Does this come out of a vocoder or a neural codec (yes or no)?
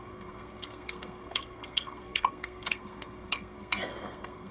yes